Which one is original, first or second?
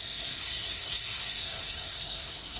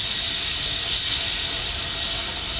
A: second